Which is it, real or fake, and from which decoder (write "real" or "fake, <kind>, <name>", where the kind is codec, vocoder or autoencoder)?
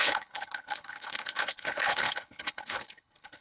fake, codec, HILCodec